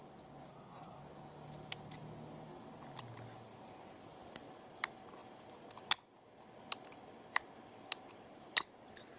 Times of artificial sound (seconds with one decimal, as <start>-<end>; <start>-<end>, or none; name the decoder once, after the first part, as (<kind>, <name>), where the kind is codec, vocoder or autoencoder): 0.5-1.0 (codec, SNAC)